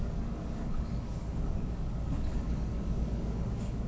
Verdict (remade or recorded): remade